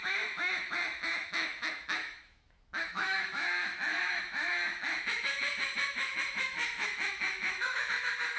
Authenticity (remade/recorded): remade